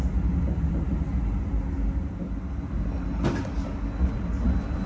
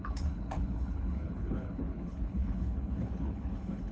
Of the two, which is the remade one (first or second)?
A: second